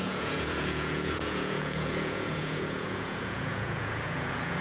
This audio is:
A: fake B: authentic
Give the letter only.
A